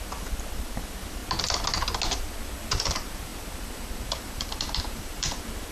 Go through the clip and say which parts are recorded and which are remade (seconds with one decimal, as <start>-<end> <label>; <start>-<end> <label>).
0.0-1.2 remade; 1.2-2.7 recorded; 2.7-5.7 remade